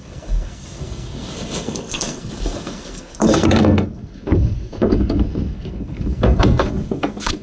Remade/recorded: remade